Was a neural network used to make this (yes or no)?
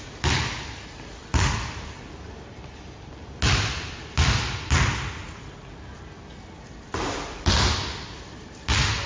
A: no